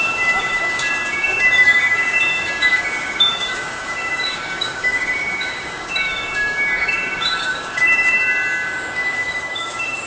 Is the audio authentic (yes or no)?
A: no